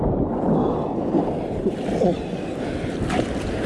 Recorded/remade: recorded